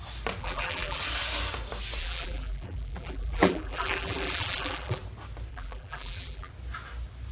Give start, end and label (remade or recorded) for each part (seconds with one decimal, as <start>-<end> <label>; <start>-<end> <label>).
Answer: 0.0-0.4 recorded; 0.4-1.0 remade; 1.0-2.0 recorded; 2.0-5.0 remade; 5.0-5.5 recorded; 5.5-6.5 remade; 6.5-7.3 recorded